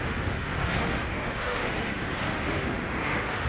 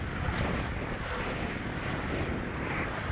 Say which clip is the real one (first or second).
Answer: second